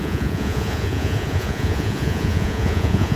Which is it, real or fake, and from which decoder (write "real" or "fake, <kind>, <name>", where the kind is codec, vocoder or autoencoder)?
fake, vocoder, Vocos